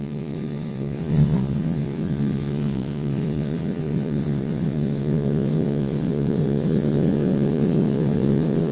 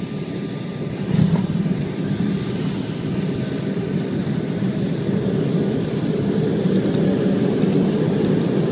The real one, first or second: second